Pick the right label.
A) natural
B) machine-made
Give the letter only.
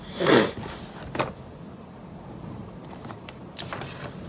A